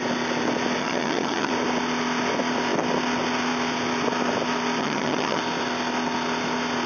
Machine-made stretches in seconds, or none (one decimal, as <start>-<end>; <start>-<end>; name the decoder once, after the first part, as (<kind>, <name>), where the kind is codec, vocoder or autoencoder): 0.8-1.5 (vocoder, HiFi-GAN); 4.8-5.4